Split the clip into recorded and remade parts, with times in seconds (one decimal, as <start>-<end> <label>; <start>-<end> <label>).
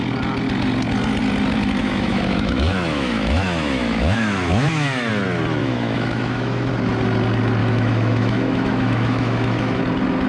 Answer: 0.0-1.8 recorded; 1.8-5.1 remade; 5.1-5.6 recorded; 5.6-6.7 remade; 6.7-7.6 recorded; 7.6-9.8 remade; 9.8-10.3 recorded